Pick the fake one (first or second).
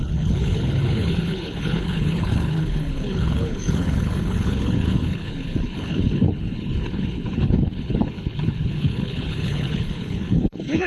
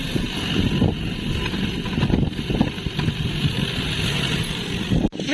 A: first